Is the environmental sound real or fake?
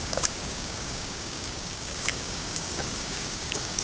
fake